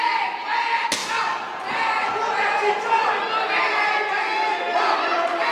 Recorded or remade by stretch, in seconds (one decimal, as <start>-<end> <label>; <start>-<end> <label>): 0.0-5.5 recorded